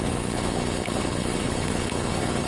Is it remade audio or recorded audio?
remade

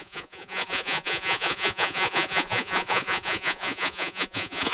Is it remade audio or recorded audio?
remade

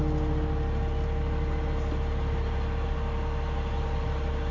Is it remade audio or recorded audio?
recorded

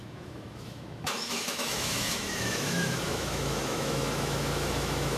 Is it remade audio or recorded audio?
remade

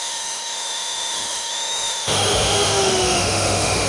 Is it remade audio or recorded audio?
remade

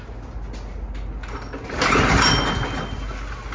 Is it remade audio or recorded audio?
recorded